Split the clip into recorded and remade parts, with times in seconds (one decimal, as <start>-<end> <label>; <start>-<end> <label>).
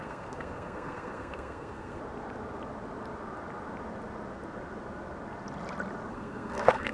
0.0-2.0 remade; 2.0-6.1 recorded; 6.1-6.9 remade